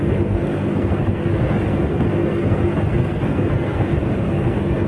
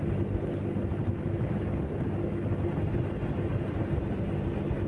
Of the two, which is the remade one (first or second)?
first